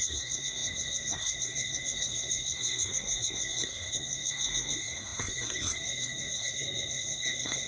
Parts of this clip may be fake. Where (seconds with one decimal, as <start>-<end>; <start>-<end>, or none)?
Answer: 0.0-7.7